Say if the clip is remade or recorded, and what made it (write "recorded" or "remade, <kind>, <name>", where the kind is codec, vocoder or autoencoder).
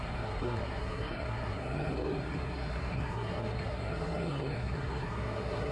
remade, codec, SNAC